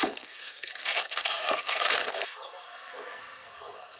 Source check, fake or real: fake